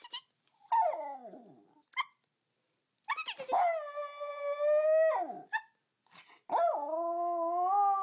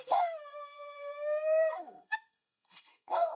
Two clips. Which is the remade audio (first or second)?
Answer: second